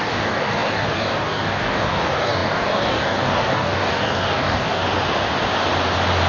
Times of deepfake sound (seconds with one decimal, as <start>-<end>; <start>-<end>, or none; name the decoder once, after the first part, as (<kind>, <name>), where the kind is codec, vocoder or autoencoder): 0.0-4.8 (codec, DAC)